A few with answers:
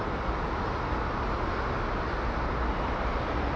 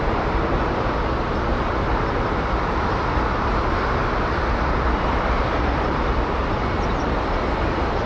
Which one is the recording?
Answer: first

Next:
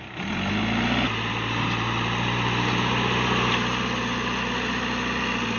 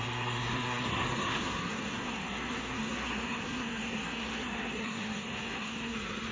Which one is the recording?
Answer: first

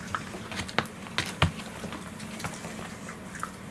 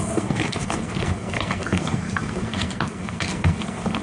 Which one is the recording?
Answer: first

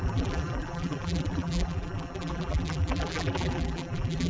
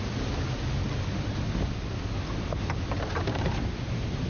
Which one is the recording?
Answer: second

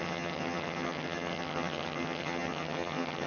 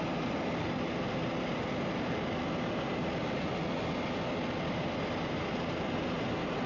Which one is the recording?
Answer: second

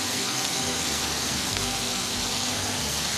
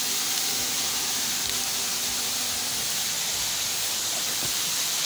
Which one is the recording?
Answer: second